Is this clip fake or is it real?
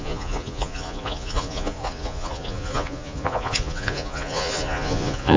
fake